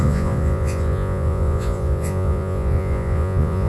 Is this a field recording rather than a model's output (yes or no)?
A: no